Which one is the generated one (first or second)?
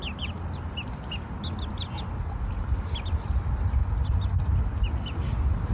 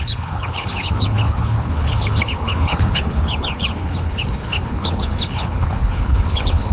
second